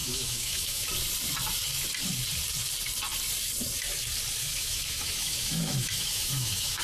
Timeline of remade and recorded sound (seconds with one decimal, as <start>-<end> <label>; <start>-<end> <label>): 0.0-0.9 remade; 0.9-4.4 recorded; 4.4-6.8 remade